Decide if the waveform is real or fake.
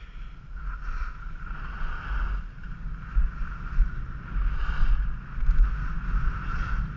real